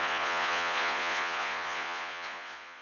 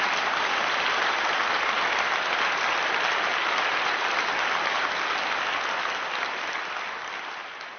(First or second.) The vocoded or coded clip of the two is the first